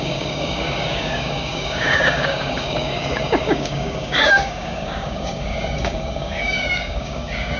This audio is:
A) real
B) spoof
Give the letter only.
B